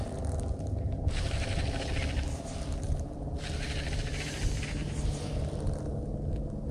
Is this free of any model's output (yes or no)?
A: yes